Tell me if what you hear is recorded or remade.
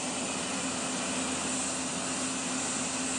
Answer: recorded